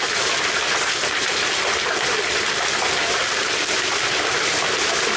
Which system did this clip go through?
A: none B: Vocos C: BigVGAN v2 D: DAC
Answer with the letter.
A